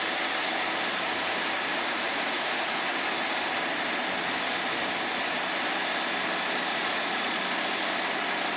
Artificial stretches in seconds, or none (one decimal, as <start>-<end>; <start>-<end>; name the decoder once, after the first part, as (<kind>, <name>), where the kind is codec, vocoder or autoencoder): 1.7-2.8 (vocoder, Vocos); 6.7-7.4